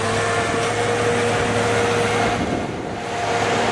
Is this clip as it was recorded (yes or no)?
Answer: yes